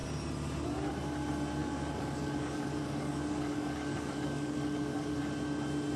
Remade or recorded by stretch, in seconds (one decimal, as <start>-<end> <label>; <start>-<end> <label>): 0.0-1.6 recorded; 1.6-5.2 remade; 5.2-6.0 recorded